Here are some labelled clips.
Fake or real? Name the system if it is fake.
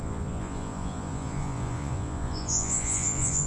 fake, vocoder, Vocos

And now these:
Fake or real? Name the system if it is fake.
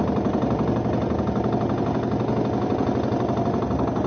real